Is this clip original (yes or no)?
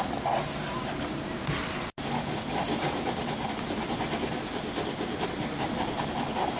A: yes